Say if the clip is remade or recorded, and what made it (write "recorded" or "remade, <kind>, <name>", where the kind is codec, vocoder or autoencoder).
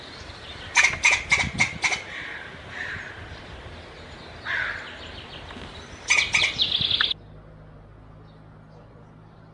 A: recorded